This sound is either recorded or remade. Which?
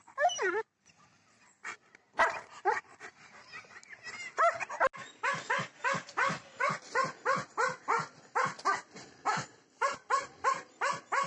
recorded